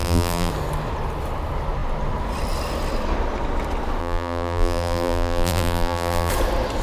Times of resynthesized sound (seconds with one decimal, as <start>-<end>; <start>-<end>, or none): 0.0-0.5; 4.0-6.3